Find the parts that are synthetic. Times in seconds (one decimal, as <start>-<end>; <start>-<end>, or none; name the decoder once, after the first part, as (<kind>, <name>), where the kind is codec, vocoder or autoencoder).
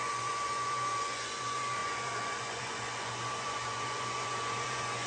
0.0-5.1 (vocoder, Vocos)